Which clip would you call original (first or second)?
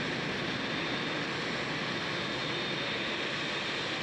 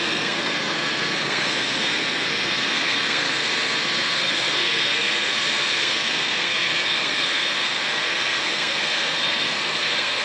first